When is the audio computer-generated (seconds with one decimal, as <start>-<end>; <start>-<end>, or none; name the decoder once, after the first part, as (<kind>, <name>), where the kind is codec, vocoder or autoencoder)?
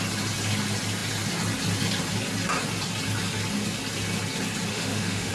4.7-5.3 (autoencoder, DAC-VAE)